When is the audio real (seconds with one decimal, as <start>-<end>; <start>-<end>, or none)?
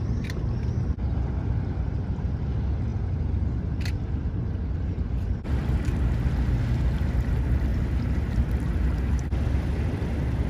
0.0-2.9; 3.9-7.7; 8.3-10.5